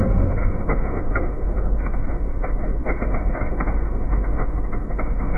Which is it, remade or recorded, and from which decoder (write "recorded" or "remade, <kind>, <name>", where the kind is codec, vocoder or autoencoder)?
remade, autoencoder, DAC-VAE